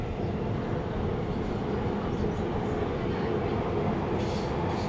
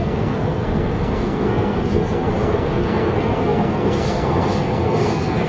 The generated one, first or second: second